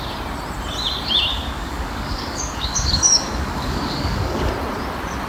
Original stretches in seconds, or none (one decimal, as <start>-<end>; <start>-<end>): 0.0-1.3; 4.5-5.3